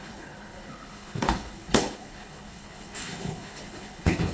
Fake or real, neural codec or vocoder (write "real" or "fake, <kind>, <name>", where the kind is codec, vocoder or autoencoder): fake, codec, HILCodec